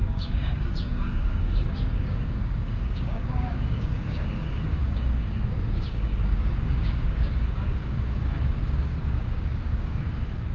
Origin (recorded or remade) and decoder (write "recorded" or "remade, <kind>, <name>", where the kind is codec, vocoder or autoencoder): remade, codec, DAC